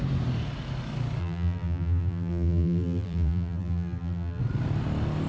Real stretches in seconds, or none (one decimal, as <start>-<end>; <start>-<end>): 0.0-1.2; 4.4-5.3